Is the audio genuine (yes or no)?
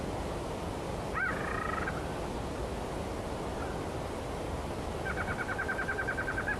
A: yes